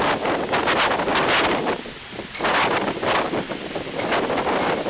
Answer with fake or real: real